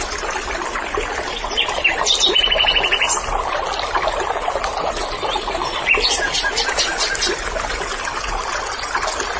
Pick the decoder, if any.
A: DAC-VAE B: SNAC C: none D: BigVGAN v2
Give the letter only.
C